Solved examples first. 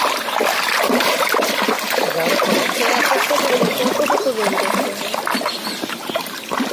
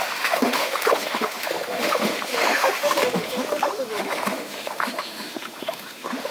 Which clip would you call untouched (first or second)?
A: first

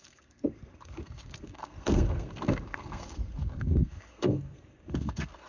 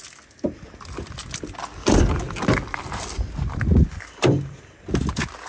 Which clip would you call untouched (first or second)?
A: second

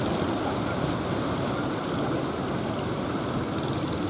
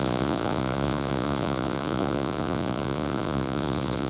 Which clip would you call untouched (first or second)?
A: first